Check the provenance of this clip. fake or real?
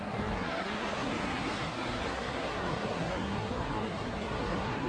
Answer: fake